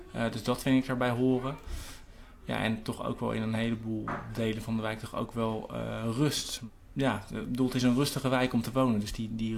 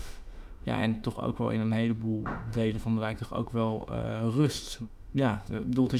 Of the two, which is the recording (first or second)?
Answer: first